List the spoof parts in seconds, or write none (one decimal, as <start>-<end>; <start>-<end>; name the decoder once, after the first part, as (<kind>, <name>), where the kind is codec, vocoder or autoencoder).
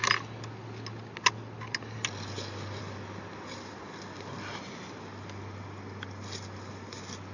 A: none